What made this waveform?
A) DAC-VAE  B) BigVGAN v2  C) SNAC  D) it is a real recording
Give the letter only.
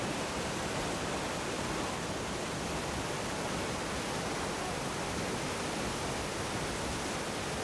D